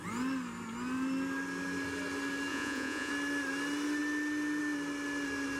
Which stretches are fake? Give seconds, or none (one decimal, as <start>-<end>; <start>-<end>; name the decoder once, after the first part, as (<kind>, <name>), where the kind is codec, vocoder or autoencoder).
2.5-3.1 (vocoder, Vocos)